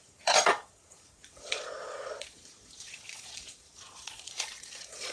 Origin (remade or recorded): remade